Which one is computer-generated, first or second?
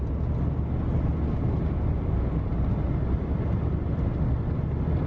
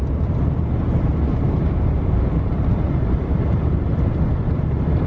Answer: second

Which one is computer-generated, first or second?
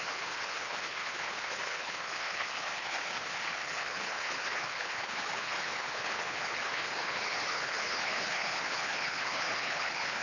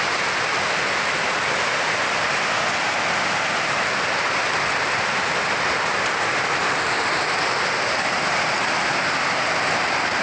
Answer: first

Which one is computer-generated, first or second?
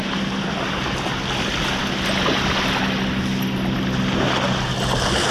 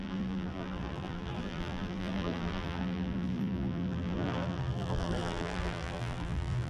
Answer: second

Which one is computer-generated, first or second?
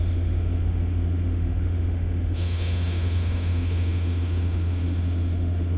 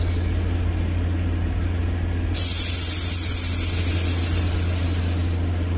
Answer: first